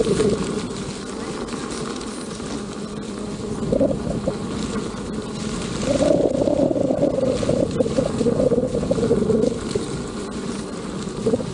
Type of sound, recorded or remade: recorded